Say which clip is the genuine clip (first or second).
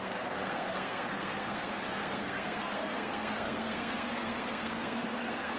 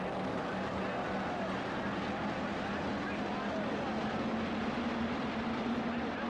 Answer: second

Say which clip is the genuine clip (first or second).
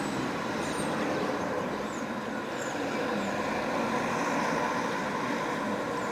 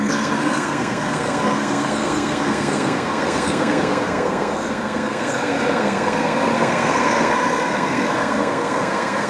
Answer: first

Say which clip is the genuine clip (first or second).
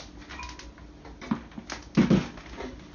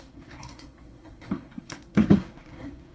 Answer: first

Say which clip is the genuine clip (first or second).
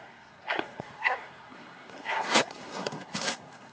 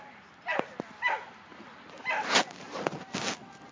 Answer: second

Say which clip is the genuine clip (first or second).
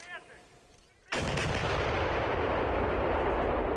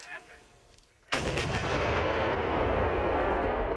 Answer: first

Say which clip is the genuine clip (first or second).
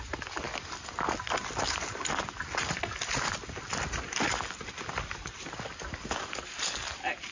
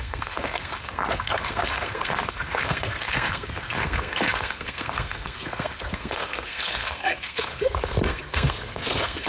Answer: first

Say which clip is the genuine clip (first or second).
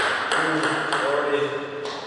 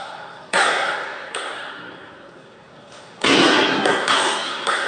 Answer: first